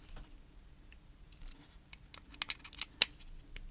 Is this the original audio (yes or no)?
yes